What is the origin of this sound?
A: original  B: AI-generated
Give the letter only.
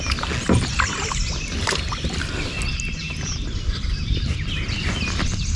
A